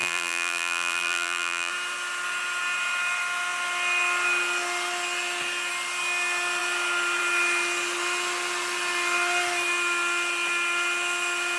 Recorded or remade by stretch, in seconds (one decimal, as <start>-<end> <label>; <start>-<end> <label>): 0.0-1.7 remade; 1.7-11.6 recorded